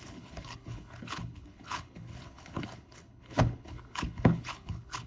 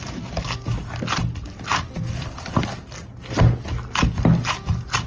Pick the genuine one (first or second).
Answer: second